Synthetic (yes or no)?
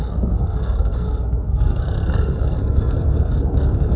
yes